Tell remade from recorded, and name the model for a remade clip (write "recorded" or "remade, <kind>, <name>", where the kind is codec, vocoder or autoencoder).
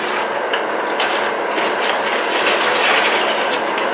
recorded